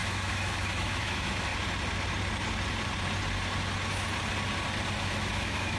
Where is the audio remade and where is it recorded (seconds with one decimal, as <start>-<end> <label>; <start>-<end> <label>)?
0.0-1.5 remade; 1.5-5.0 recorded; 5.0-5.8 remade